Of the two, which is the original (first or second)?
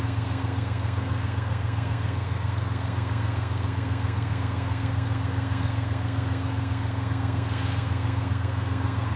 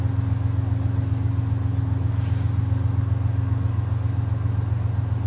second